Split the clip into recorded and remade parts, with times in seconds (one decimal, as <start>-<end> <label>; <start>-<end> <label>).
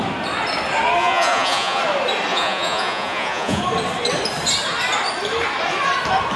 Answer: 0.0-1.0 recorded; 1.0-1.8 remade; 1.8-2.3 recorded; 2.3-3.6 remade; 3.6-6.4 recorded